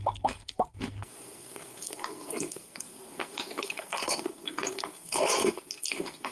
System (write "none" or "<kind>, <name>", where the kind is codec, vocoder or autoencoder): codec, SNAC